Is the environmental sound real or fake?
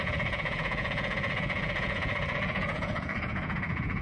fake